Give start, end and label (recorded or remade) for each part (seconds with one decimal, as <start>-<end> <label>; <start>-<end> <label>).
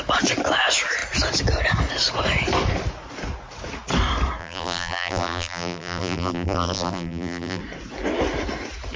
0.0-4.4 recorded; 4.4-7.6 remade; 7.6-9.0 recorded